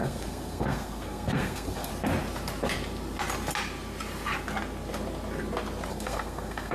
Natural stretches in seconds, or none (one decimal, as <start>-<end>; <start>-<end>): 1.9-5.9